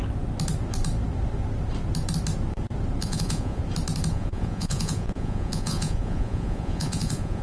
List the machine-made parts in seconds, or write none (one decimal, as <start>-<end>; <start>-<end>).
3.0-3.6; 4.1-7.4